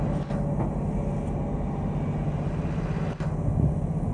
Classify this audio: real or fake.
real